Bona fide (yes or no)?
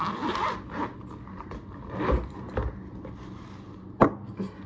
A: yes